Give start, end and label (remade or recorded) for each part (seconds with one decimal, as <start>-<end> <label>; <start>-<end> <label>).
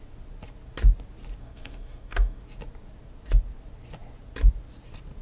0.0-1.4 recorded; 1.4-2.4 remade; 2.4-5.2 recorded